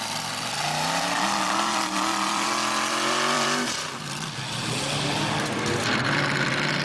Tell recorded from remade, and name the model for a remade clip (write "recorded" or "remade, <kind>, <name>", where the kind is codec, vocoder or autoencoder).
remade, vocoder, BigVGAN v2